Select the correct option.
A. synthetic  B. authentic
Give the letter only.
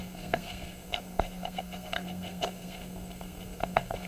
A